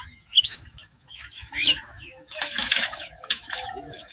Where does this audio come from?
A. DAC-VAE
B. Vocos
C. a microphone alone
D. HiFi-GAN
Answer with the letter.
A